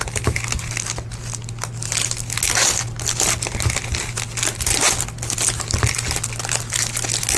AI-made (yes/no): no